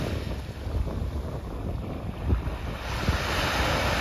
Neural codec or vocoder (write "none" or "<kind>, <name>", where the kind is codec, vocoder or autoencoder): none